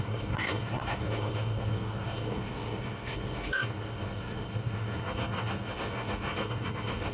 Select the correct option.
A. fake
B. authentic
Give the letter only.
A